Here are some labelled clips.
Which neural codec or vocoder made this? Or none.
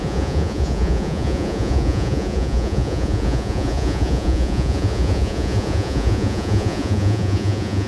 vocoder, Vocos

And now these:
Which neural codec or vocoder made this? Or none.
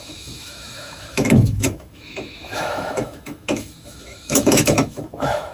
autoencoder, DAC-VAE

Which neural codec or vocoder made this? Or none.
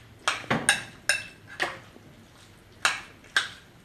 none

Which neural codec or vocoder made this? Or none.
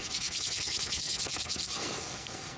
codec, SNAC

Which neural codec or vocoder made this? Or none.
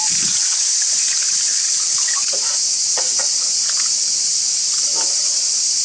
vocoder, Vocos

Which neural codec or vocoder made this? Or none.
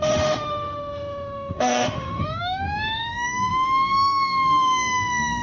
autoencoder, DAC-VAE